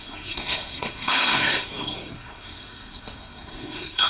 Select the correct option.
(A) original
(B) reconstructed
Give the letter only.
B